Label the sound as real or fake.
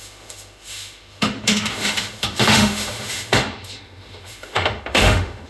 fake